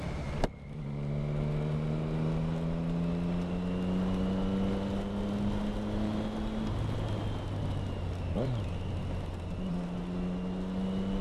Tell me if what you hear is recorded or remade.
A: recorded